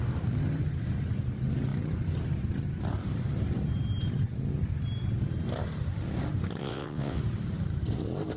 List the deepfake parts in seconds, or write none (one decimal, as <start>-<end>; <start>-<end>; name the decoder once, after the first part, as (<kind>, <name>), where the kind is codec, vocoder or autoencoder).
6.6-7.2 (vocoder, WaveNeXt)